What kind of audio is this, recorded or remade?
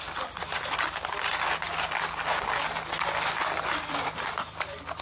recorded